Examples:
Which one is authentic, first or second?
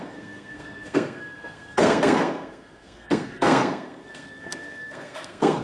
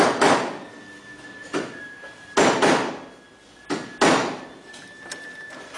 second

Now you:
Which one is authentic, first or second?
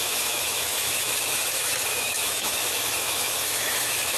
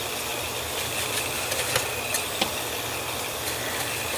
second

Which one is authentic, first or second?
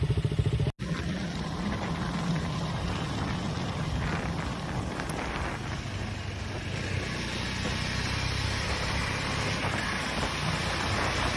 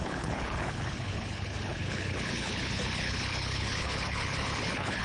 first